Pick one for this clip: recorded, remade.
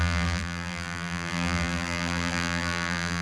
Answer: remade